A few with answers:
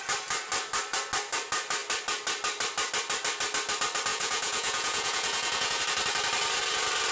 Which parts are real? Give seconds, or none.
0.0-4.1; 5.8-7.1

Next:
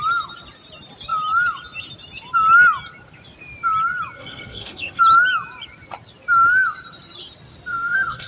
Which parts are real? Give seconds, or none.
0.0-4.2; 5.0-7.7

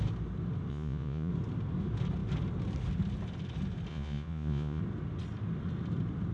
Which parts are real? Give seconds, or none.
0.0-0.7; 1.3-3.9; 4.8-6.3

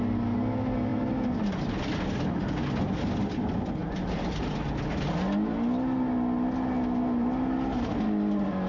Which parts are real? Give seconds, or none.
0.0-8.7